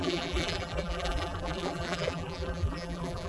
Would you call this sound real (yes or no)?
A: no